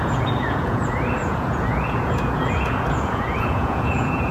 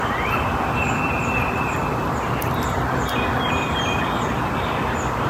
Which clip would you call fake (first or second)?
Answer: first